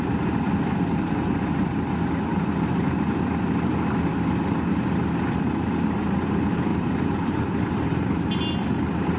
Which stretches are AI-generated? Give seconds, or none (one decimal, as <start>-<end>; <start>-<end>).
2.3-2.9; 6.7-7.3